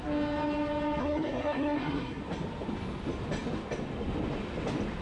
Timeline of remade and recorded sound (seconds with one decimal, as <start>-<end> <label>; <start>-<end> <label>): 0.0-1.0 recorded; 1.0-2.2 remade; 2.2-5.0 recorded